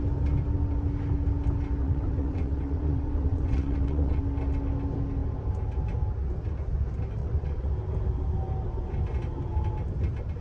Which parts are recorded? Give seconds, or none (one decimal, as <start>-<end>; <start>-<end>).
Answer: 0.0-1.8; 4.2-7.2; 7.7-10.4